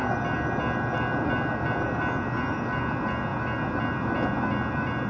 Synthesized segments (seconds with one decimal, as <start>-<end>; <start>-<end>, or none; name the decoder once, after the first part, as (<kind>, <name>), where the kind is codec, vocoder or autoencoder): none